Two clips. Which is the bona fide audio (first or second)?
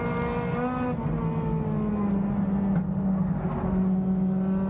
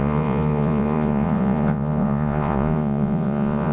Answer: first